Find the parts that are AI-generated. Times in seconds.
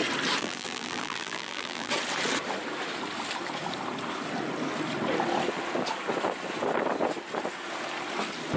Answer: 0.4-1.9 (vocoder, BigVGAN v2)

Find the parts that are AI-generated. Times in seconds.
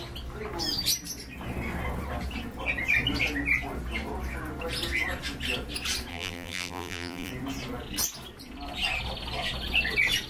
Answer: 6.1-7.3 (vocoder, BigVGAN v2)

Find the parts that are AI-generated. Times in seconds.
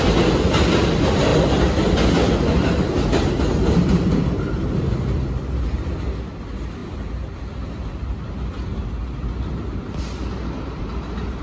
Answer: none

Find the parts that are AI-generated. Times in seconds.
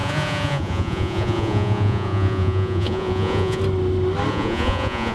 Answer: 0.0-3.6 (vocoder, Vocos); 4.3-5.1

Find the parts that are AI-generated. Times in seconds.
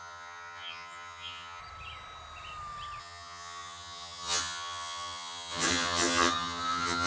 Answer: 0.0-1.6 (vocoder, HiFi-GAN); 3.0-7.1